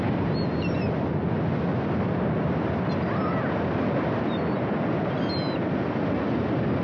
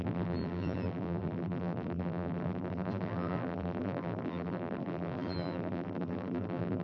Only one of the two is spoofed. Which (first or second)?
second